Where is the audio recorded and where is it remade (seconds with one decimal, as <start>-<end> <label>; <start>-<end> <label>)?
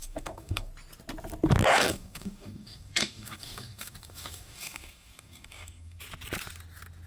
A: 0.0-0.7 remade; 0.7-1.7 recorded; 1.7-6.0 remade; 6.0-7.1 recorded